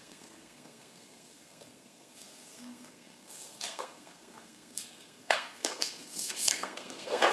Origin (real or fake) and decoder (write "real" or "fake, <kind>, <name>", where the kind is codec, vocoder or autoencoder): fake, codec, SNAC